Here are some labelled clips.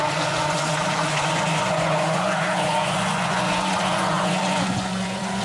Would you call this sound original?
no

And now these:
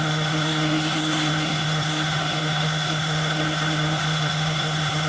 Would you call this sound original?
no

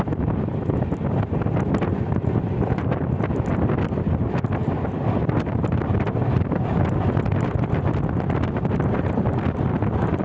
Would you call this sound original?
yes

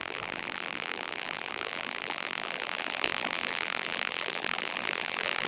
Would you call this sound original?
no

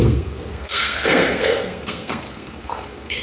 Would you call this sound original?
no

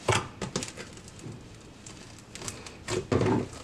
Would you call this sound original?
yes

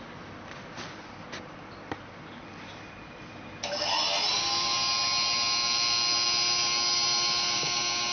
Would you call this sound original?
yes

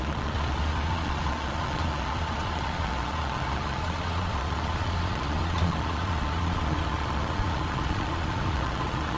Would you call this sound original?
no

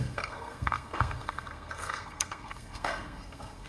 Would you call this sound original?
no